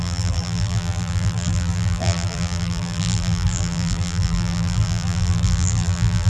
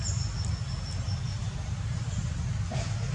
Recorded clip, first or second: second